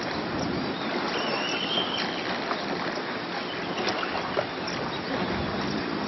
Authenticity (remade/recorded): recorded